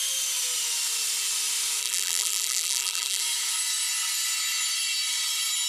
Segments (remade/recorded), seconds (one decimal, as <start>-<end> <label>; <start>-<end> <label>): 0.0-1.8 recorded; 1.8-3.2 remade; 3.2-5.7 recorded